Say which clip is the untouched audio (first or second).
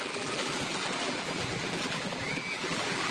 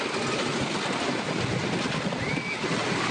second